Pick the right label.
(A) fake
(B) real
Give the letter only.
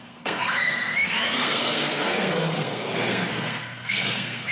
A